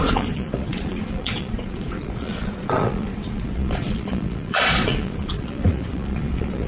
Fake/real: fake